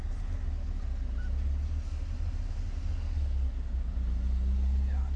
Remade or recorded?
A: recorded